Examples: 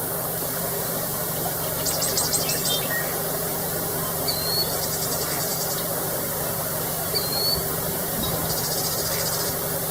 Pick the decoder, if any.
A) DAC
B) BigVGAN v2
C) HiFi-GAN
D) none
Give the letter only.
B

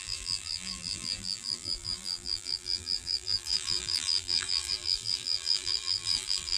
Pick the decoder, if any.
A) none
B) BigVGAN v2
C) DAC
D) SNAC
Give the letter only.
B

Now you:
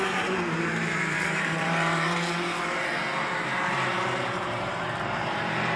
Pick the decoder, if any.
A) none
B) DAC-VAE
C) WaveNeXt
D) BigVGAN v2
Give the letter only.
D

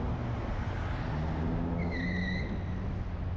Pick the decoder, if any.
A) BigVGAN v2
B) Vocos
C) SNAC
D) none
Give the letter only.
D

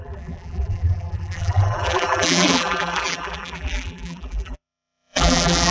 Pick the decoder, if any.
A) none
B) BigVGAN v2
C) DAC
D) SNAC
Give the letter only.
B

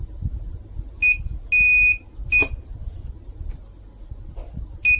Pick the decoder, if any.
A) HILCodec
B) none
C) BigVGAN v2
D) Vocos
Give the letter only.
B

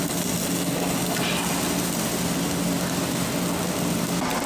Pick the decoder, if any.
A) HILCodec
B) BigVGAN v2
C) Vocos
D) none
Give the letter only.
D